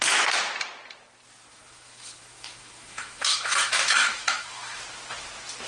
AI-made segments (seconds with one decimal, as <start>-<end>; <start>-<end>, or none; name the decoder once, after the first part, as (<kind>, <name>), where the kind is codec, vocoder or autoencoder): 1.5-4.8 (autoencoder, DAC-VAE)